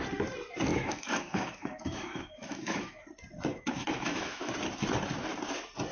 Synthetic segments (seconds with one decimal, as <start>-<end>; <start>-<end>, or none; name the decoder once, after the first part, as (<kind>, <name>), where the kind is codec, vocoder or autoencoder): 0.7-3.0 (autoencoder, DAC-VAE); 3.5-4.5